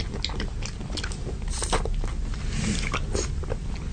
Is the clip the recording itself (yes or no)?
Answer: yes